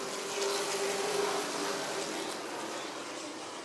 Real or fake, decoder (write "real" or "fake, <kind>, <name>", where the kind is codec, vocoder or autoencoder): real